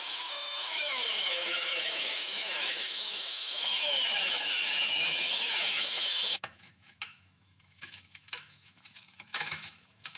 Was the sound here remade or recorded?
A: remade